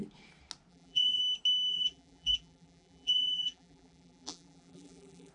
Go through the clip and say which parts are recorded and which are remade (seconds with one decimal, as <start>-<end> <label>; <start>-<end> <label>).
0.0-0.7 recorded; 0.7-1.2 remade; 1.2-1.7 recorded; 1.7-5.3 remade